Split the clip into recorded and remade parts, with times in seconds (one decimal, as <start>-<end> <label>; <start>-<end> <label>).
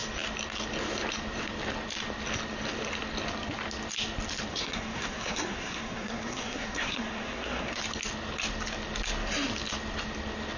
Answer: 0.0-4.5 recorded; 4.5-7.8 remade; 7.8-10.6 recorded